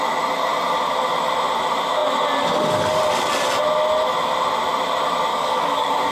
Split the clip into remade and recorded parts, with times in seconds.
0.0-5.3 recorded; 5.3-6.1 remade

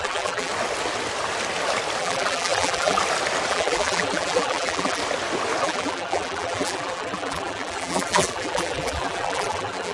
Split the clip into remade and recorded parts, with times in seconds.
0.0-0.5 remade; 0.5-2.0 recorded; 2.0-3.0 remade; 3.0-3.5 recorded; 3.5-5.0 remade; 5.0-5.6 recorded; 5.6-9.9 remade

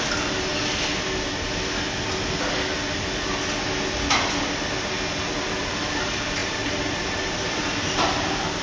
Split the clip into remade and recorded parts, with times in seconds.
0.0-0.5 remade; 0.5-5.7 recorded; 5.7-8.6 remade

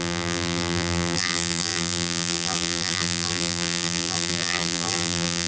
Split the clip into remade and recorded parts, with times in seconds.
0.0-5.5 remade

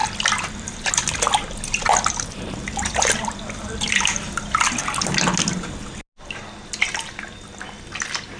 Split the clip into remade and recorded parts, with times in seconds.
0.0-8.4 recorded